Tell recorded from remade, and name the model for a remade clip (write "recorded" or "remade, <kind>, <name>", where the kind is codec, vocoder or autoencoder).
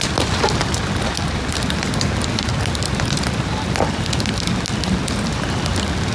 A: recorded